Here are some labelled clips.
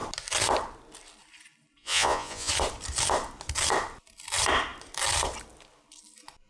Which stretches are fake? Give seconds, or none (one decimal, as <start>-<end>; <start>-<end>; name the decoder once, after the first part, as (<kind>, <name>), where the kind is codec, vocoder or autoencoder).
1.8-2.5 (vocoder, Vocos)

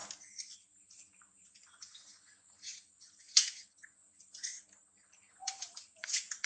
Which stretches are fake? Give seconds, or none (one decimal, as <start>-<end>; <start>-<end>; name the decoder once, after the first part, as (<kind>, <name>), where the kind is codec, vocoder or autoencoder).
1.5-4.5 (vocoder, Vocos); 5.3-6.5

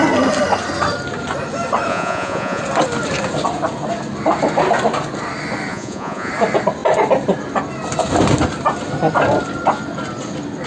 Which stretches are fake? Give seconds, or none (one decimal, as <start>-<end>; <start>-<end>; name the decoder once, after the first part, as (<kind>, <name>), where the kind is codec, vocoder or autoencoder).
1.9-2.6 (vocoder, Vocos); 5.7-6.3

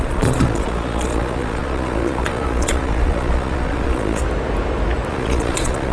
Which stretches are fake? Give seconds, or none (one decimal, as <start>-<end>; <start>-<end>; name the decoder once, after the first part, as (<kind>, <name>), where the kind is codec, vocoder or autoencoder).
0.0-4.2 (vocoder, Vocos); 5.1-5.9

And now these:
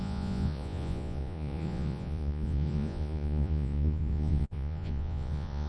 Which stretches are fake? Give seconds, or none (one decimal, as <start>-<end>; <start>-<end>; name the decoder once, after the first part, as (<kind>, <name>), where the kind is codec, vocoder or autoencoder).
0.0-5.7 (vocoder, Vocos)

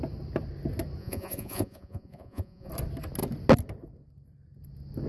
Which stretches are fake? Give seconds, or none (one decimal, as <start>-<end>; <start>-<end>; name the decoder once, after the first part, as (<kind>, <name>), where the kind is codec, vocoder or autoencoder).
1.0-2.7 (vocoder, Vocos)

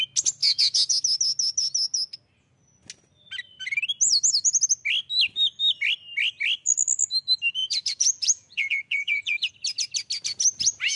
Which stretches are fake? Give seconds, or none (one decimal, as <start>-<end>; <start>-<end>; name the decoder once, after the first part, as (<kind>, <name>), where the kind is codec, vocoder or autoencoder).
0.4-0.9 (vocoder, Vocos); 7.6-9.5

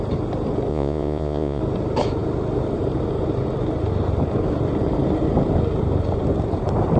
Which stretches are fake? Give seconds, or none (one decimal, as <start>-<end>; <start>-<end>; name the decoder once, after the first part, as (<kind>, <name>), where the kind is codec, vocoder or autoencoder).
0.7-1.6 (vocoder, Vocos)